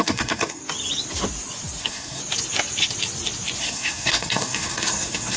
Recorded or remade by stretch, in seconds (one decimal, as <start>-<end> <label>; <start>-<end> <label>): 0.0-0.6 remade; 0.6-1.8 recorded; 1.8-2.2 remade; 2.2-3.6 recorded; 3.6-5.4 remade